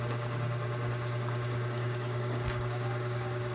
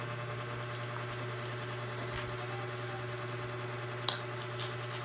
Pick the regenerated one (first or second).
first